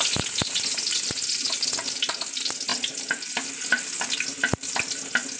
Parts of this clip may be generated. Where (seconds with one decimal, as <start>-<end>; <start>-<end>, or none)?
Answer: none